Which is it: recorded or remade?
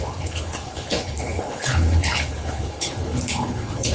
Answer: remade